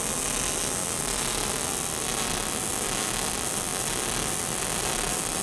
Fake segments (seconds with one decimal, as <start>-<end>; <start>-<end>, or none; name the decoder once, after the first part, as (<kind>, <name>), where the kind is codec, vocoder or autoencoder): none